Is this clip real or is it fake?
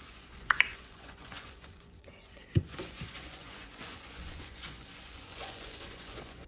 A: fake